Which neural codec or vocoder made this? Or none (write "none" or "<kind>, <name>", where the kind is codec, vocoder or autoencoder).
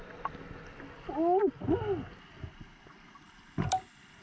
none